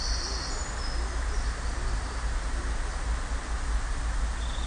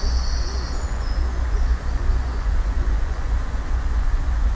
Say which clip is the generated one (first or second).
second